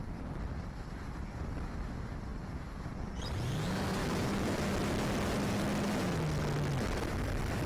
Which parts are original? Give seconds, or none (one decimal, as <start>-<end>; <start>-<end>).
0.0-4.0; 4.7-7.7

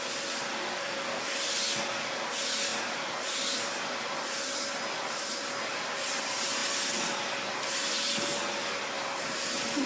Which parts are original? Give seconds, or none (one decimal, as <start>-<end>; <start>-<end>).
0.0-0.5; 1.2-9.9

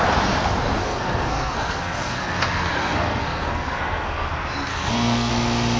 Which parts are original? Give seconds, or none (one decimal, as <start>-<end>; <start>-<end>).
0.0-0.8; 4.3-4.7; 5.3-5.8